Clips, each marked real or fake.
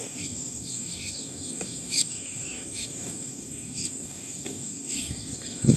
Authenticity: fake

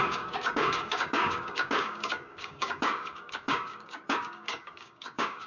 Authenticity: fake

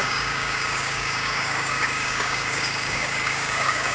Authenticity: fake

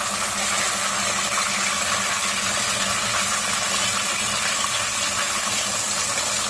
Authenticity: real